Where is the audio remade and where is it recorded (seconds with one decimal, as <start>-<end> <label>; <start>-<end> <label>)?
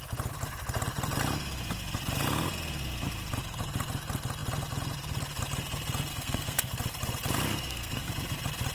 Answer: 0.0-6.1 recorded; 6.1-6.7 remade; 6.7-7.5 recorded; 7.5-8.1 remade; 8.1-8.7 recorded